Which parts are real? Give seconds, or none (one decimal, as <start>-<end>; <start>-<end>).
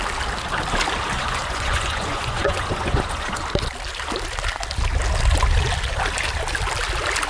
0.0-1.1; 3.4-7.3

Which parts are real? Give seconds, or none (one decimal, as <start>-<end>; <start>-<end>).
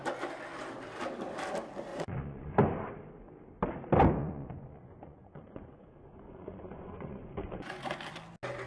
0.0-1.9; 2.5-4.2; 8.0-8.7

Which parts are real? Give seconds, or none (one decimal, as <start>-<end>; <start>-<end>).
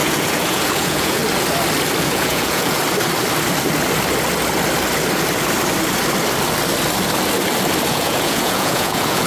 1.2-2.0; 2.8-7.9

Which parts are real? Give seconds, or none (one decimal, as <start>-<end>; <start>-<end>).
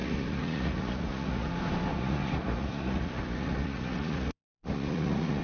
1.5-1.9